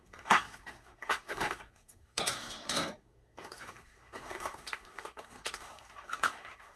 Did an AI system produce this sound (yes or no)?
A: yes